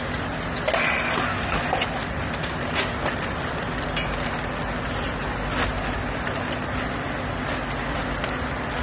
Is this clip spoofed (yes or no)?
no